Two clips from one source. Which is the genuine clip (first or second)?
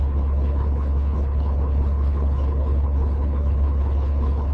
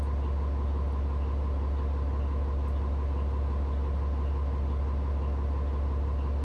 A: second